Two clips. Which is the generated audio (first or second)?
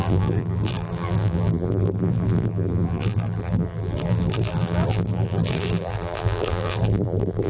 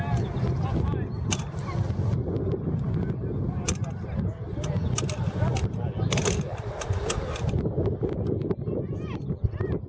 first